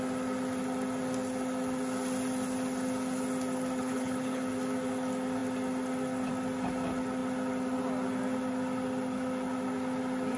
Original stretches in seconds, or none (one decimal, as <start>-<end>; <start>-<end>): 0.0-3.8; 4.4-10.4